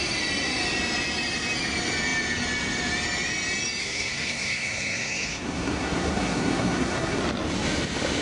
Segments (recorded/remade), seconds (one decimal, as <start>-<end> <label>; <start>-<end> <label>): 0.0-3.8 recorded; 3.8-7.2 remade; 7.2-8.2 recorded